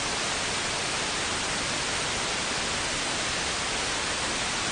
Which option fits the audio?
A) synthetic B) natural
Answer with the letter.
B